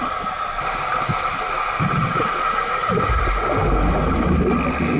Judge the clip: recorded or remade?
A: recorded